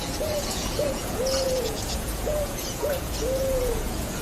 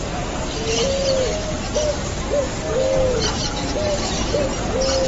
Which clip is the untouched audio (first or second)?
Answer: second